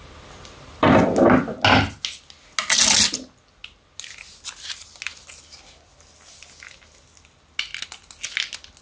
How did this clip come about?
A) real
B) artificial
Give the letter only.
A